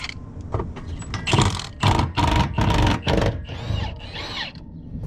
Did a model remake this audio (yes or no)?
no